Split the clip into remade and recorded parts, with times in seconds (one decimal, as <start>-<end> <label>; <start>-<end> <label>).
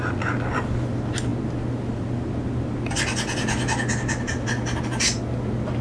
0.0-5.8 recorded